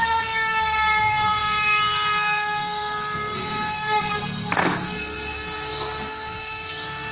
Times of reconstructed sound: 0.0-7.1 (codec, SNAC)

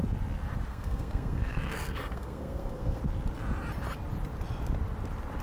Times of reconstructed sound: 0.7-3.0 (codec, SNAC)

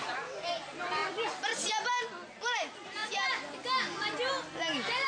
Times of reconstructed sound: none

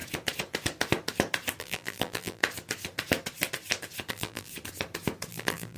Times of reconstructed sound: 1.6-2.4 (vocoder, BigVGAN v2); 4.1-4.5; 5.3-5.8

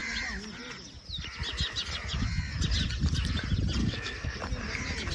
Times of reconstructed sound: 3.8-4.4 (codec, SNAC)

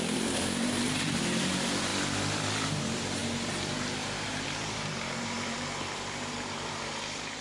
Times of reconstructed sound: 0.0-1.9 (vocoder, BigVGAN v2); 2.8-7.4

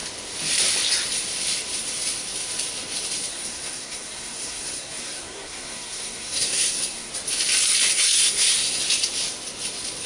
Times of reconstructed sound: 3.3-7.1 (codec, SNAC); 7.9-8.8